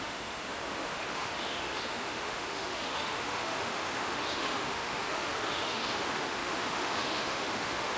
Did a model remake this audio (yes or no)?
yes